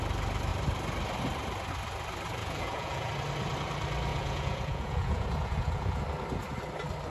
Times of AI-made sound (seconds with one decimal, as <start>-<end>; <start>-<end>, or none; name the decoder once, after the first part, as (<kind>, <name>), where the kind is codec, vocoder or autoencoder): 2.4-3.1 (vocoder, Vocos); 4.1-6.0